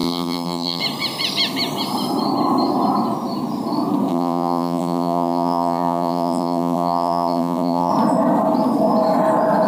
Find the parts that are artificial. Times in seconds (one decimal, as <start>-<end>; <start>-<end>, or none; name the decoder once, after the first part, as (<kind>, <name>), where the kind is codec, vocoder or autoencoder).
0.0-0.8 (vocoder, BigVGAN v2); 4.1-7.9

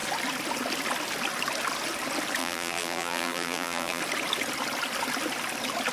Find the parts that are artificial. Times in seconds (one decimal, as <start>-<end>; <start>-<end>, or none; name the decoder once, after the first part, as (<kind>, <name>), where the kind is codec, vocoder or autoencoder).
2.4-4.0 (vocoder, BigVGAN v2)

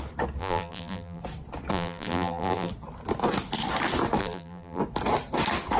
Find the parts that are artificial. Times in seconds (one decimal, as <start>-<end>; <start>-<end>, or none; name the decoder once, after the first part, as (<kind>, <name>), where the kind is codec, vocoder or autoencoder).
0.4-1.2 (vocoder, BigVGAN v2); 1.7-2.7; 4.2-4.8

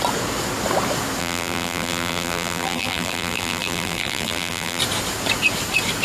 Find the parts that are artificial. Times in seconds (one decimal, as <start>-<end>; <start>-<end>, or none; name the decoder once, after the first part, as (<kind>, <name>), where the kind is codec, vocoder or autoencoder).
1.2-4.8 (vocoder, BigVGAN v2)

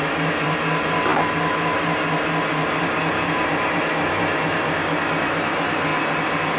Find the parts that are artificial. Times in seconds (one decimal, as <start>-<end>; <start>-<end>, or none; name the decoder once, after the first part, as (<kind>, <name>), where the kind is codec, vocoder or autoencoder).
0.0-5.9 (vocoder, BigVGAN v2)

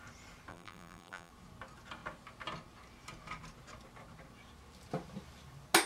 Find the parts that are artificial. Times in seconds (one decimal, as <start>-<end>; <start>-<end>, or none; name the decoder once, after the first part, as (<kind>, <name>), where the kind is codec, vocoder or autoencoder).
0.5-1.3 (vocoder, BigVGAN v2)

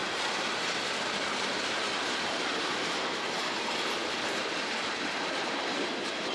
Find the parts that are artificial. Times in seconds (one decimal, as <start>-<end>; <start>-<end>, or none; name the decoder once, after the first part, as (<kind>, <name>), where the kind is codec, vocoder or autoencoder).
0.0-6.3 (vocoder, BigVGAN v2)

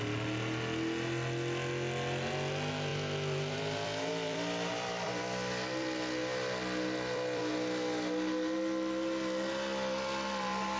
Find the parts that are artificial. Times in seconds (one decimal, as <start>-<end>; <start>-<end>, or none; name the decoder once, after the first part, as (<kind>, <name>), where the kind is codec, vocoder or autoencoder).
2.9-7.4 (vocoder, BigVGAN v2)